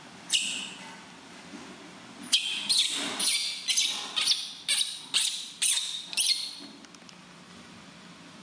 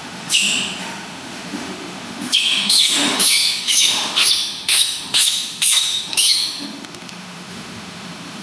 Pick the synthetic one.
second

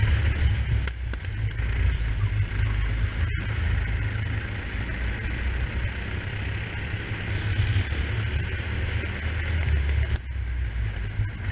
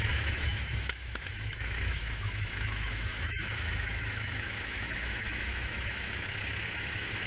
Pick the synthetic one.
second